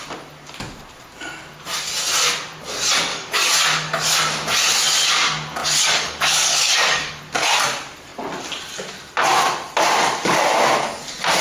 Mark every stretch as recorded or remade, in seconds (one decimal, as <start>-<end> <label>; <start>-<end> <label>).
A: 0.0-3.1 recorded; 3.1-4.2 remade; 4.2-5.6 recorded; 5.6-7.2 remade; 7.2-11.4 recorded